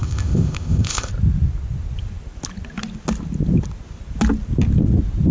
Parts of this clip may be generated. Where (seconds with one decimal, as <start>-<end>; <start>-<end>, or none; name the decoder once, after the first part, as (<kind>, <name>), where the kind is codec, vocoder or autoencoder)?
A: 0.0-1.1 (codec, ZipCodec)